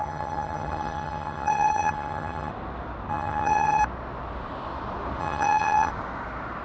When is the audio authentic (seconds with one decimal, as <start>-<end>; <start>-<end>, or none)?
2.5-3.1; 3.8-5.2; 5.9-6.6